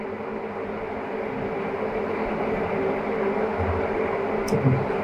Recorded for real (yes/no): yes